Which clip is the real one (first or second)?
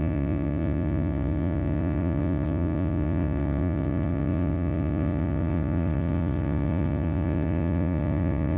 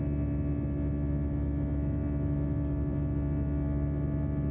second